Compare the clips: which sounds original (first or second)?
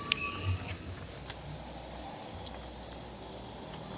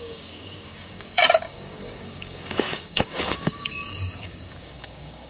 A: first